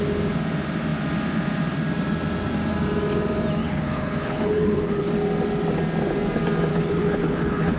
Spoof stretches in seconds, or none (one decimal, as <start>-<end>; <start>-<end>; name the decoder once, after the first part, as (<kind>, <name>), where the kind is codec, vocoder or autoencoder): 3.6-5.1 (codec, HILCodec); 6.7-7.8